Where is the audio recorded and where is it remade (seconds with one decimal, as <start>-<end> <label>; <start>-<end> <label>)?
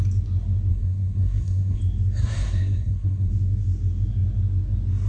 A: 0.0-0.7 recorded; 0.7-1.8 remade; 1.8-2.2 recorded; 2.2-3.3 remade; 3.3-5.1 recorded